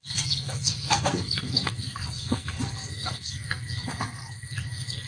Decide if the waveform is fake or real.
fake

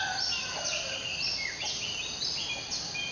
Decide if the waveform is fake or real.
real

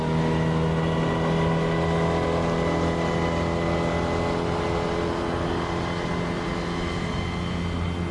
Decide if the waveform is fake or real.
real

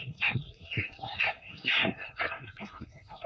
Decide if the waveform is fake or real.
fake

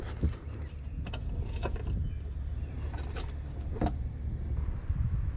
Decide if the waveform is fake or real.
real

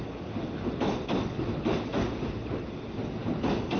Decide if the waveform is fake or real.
real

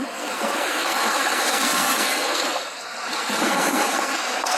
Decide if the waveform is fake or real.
fake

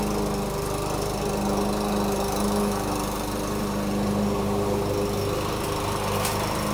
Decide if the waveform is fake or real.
real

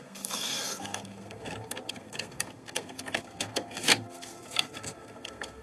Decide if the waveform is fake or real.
fake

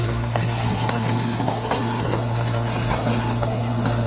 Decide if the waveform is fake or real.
fake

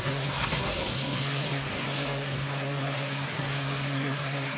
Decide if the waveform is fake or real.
fake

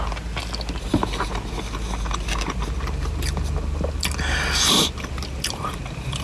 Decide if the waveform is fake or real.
real